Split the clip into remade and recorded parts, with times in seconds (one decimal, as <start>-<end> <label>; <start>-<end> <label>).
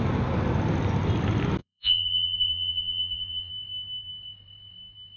0.0-1.6 recorded; 1.6-3.5 remade; 3.5-5.2 recorded